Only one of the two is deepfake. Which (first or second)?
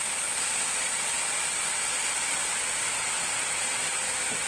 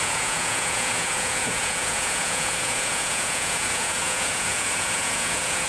second